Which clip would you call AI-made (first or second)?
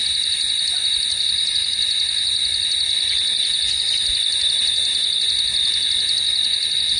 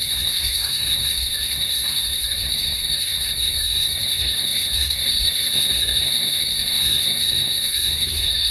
second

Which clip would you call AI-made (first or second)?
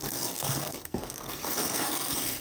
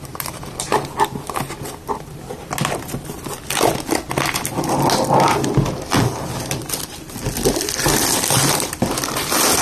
first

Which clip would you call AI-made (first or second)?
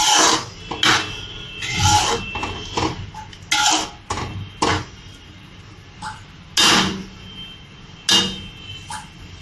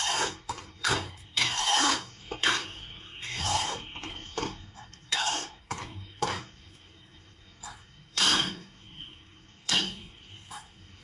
second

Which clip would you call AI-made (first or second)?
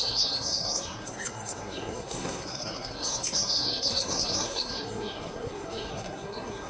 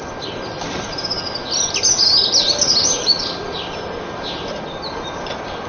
first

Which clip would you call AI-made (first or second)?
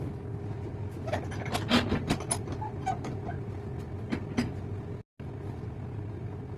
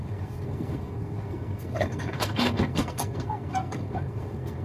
second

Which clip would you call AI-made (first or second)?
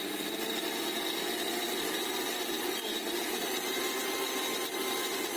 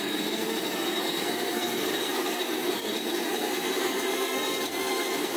second